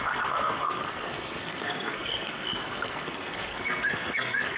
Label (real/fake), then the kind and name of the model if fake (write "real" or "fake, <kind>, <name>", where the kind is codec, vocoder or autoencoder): fake, codec, SNAC